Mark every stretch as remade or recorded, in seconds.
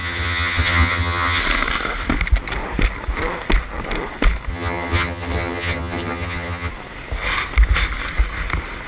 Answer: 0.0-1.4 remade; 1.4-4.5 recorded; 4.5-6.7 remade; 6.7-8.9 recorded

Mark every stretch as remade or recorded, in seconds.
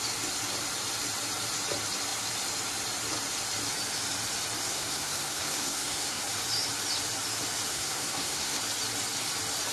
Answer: 0.0-4.7 recorded; 4.7-6.2 remade; 6.2-7.7 recorded; 7.7-8.6 remade; 8.6-9.7 recorded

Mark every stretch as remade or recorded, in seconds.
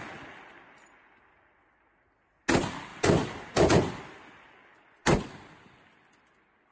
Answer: 0.0-6.7 recorded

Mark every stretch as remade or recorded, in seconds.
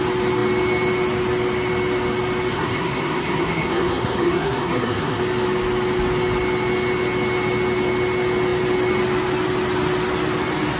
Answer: 0.0-2.5 recorded; 2.5-5.2 remade; 5.2-10.8 recorded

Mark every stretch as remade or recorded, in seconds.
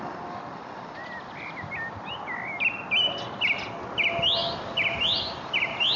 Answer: 0.0-1.0 recorded; 1.0-2.1 remade; 2.1-4.4 recorded; 4.4-5.2 remade; 5.2-6.0 recorded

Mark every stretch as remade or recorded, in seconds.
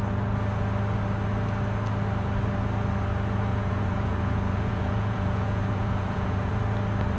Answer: 0.0-3.5 recorded; 3.5-6.5 remade; 6.5-7.2 recorded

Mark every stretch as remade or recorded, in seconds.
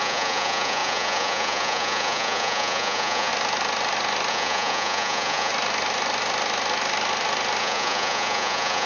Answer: 0.0-3.3 remade; 3.3-4.3 recorded; 4.3-5.5 remade; 5.5-7.6 recorded; 7.6-8.9 remade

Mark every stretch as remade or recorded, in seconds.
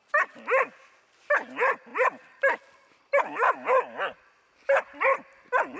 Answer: 0.0-5.8 recorded